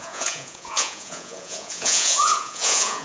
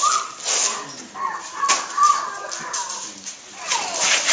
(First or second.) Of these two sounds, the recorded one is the second